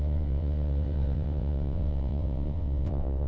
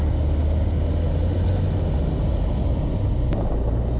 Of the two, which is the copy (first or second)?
first